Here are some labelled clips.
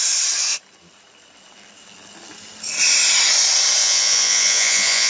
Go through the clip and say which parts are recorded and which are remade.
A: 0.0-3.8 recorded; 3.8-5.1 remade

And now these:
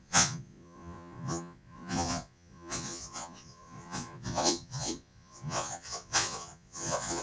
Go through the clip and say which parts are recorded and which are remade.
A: 0.0-7.2 remade

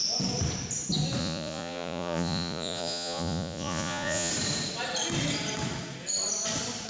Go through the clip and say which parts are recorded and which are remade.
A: 0.0-1.2 recorded; 1.2-4.3 remade; 4.3-6.9 recorded

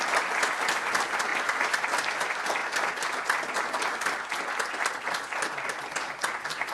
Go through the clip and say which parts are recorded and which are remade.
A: 0.0-6.7 recorded

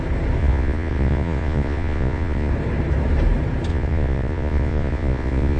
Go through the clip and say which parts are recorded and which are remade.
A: 0.0-0.4 recorded; 0.4-2.5 remade; 2.5-3.7 recorded; 3.7-5.6 remade

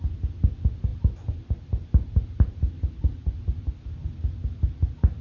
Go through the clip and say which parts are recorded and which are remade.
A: 0.0-5.2 recorded

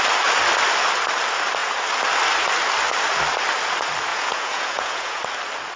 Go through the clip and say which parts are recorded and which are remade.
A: 0.0-4.1 recorded; 4.1-5.2 remade; 5.2-5.8 recorded